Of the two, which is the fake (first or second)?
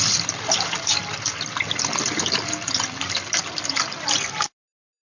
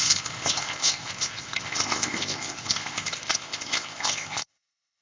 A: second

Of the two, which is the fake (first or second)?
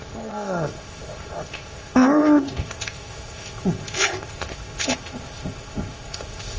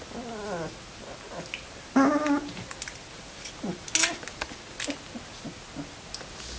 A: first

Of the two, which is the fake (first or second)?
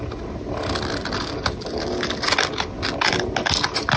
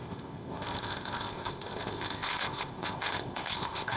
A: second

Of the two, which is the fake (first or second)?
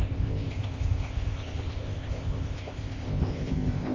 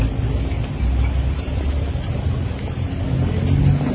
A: first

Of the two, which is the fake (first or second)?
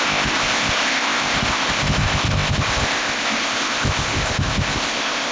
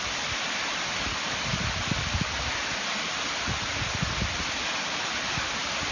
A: first